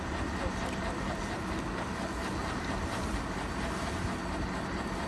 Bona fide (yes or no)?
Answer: yes